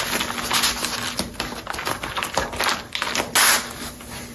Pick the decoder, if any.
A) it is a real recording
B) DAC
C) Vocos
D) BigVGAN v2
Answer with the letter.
A